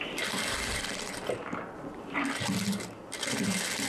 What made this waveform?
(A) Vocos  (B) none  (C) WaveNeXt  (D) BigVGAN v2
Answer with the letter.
B